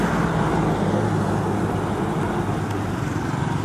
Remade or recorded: recorded